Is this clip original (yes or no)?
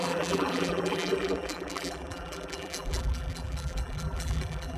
no